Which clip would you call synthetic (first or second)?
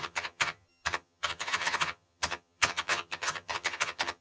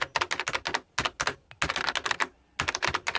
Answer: first